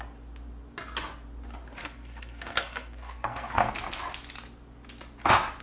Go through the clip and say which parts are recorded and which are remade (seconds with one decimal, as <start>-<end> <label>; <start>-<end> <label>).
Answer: 0.0-1.8 recorded; 1.8-3.7 remade; 3.7-5.6 recorded